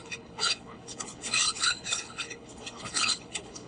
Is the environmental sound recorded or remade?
remade